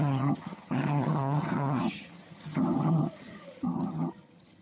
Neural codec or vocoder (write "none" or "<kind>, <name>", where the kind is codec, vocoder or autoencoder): vocoder, HiFi-GAN